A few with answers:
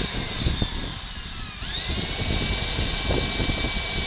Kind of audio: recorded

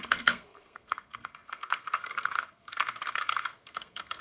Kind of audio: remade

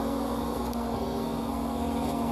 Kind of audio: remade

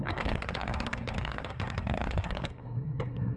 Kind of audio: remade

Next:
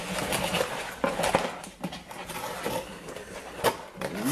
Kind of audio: recorded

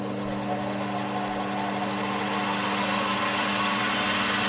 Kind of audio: recorded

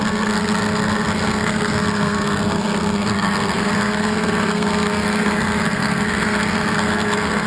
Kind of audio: remade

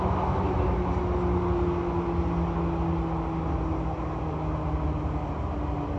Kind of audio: recorded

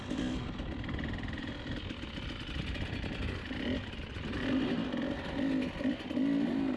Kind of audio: recorded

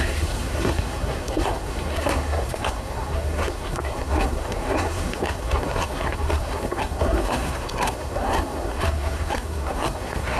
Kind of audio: remade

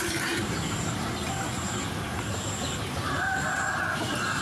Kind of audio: recorded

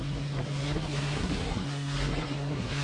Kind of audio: remade